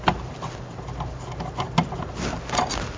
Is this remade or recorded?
recorded